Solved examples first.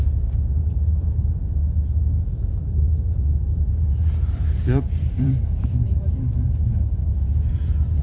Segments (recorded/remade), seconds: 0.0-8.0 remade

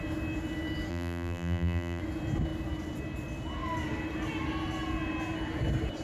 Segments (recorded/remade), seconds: 0.0-0.9 recorded; 0.9-2.0 remade; 2.0-6.0 recorded

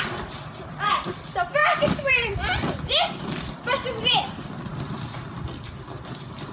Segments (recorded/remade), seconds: 0.0-6.5 remade

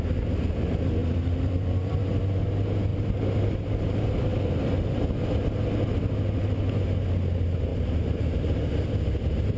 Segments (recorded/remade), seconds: 0.0-1.0 recorded; 1.0-2.0 remade; 2.0-2.9 recorded; 2.9-3.9 remade; 3.9-7.7 recorded; 7.7-9.6 remade

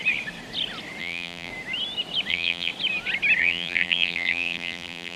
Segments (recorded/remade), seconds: 0.0-1.0 recorded; 1.0-1.5 remade; 1.5-2.3 recorded; 2.3-2.7 remade; 2.7-3.4 recorded; 3.4-5.2 remade

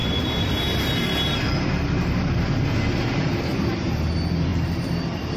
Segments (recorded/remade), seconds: 0.0-3.5 recorded; 3.5-4.1 remade; 4.1-5.4 recorded

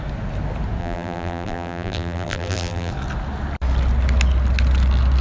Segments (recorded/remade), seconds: 0.0-0.8 recorded; 0.8-2.9 remade; 2.9-5.2 recorded